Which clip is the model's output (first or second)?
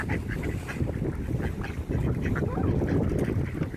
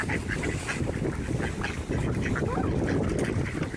first